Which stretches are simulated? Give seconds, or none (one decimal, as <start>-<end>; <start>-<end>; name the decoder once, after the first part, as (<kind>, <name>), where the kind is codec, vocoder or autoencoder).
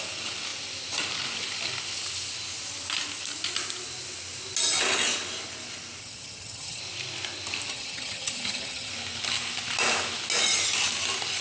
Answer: 6.0-6.8 (vocoder, HiFi-GAN); 7.7-8.9